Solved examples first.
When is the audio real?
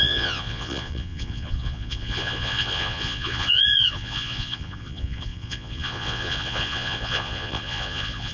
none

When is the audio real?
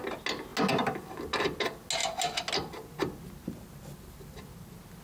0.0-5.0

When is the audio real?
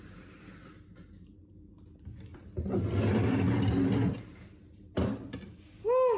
0.0-6.2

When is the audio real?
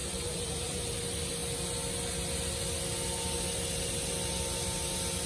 0.9-5.3